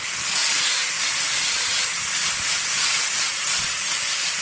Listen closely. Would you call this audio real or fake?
real